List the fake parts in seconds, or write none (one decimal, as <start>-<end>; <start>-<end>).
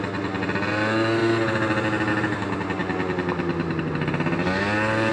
none